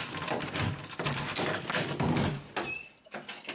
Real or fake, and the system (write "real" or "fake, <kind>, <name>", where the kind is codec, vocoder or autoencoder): fake, vocoder, BigVGAN v2